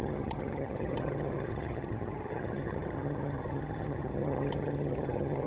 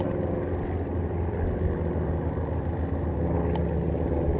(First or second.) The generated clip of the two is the first